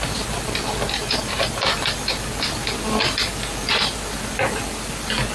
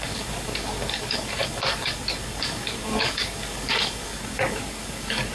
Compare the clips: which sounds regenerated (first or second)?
second